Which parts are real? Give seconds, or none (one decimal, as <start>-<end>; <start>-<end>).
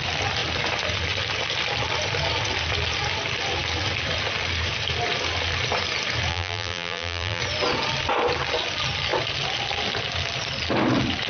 0.0-6.3; 7.4-11.3